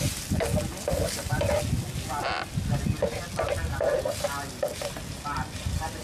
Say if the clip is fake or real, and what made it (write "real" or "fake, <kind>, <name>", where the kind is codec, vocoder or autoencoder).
real